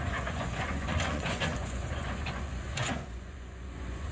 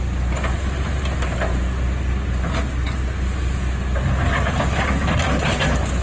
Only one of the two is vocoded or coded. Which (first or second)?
first